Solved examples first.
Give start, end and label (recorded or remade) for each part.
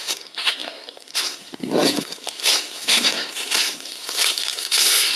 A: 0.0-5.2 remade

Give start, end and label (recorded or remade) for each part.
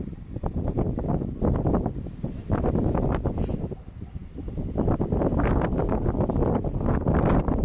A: 0.0-7.6 recorded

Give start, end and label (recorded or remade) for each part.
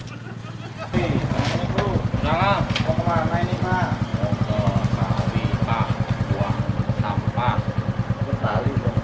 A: 0.0-9.0 recorded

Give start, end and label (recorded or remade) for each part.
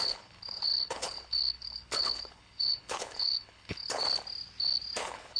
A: 0.0-4.0 remade; 4.0-5.0 recorded; 5.0-5.4 remade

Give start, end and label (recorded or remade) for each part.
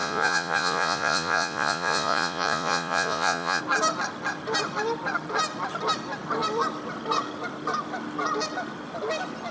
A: 0.0-3.6 remade; 3.6-9.5 recorded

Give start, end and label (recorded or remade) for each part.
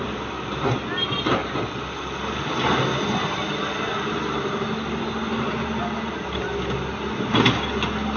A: 0.0-2.9 recorded; 2.9-5.0 remade; 5.0-8.2 recorded